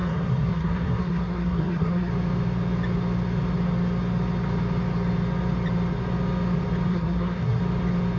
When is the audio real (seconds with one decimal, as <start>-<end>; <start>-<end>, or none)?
2.1-6.9; 7.6-8.2